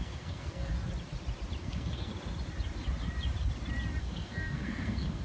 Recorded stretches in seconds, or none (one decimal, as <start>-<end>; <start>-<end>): 0.7-1.6; 2.1-4.0